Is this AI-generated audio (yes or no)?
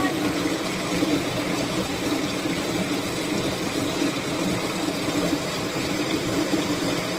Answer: yes